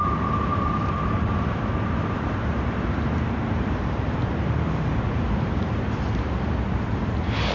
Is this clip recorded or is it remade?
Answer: remade